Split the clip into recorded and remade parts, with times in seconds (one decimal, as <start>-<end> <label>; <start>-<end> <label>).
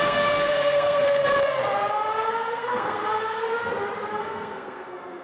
0.0-1.3 remade; 1.3-1.9 recorded; 1.9-3.5 remade; 3.5-4.1 recorded; 4.1-5.2 remade